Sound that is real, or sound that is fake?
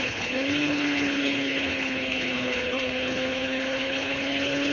fake